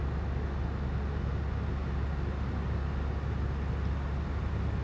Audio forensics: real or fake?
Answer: real